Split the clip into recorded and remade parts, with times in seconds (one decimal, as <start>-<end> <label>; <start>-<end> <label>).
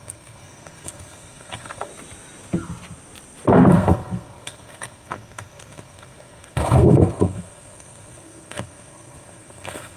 0.0-1.9 remade; 1.9-3.7 recorded; 3.7-10.0 remade